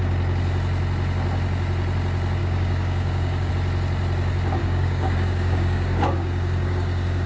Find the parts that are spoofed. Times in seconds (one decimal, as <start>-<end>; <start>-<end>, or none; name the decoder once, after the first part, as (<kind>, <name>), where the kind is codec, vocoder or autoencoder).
2.4-3.5 (codec, DAC); 4.6-7.3